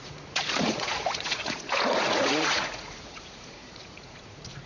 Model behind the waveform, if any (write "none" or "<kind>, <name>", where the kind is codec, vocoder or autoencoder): vocoder, Vocos